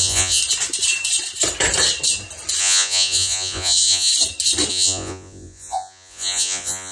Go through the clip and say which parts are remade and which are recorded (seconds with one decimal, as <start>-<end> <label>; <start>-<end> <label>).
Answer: 0.0-0.4 remade; 0.4-2.6 recorded; 2.6-4.1 remade; 4.1-4.7 recorded; 4.7-6.9 remade